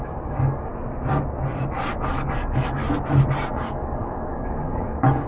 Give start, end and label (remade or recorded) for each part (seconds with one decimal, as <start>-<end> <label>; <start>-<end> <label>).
0.0-0.7 remade; 0.7-2.1 recorded; 2.1-2.8 remade; 2.8-3.5 recorded; 3.5-5.3 remade